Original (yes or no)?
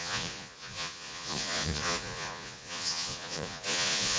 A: no